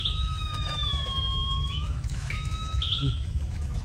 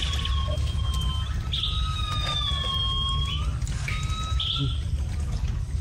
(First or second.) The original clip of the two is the second